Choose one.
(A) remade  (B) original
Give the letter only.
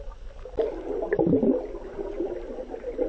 B